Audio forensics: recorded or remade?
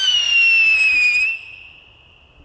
recorded